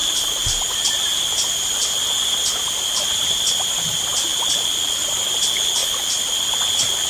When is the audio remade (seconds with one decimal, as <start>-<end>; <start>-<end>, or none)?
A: 0.0-3.4